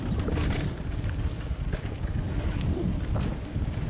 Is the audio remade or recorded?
remade